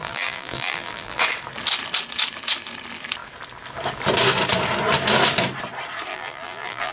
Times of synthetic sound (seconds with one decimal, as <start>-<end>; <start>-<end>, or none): 0.0-1.2; 6.1-6.9